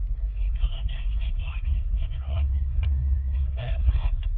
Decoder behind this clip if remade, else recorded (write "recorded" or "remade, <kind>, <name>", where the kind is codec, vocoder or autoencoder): remade, codec, SNAC